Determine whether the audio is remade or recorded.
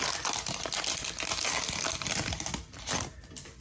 recorded